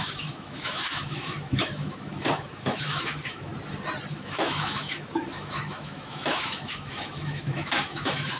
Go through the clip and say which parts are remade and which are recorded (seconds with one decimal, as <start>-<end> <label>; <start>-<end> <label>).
0.0-3.5 remade; 3.5-4.1 recorded; 4.1-8.4 remade